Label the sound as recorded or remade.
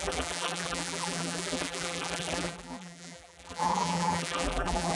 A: remade